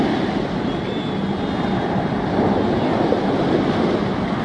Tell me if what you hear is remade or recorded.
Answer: remade